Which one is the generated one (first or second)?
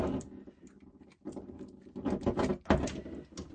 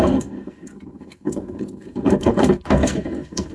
second